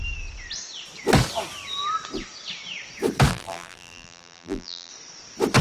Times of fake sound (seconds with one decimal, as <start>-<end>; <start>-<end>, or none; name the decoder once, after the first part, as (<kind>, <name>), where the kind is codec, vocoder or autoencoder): 3.3-4.9 (vocoder, BigVGAN v2)